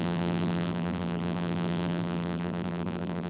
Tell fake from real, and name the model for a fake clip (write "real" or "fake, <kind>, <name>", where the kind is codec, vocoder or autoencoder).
fake, vocoder, BigVGAN v2